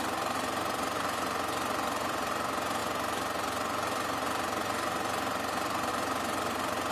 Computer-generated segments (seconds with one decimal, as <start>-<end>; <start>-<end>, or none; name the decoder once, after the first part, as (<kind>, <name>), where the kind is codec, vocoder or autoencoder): 0.0-6.9 (vocoder, BigVGAN v2)